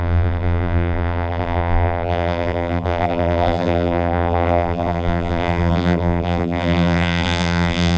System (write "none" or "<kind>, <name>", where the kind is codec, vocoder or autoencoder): vocoder, BigVGAN v2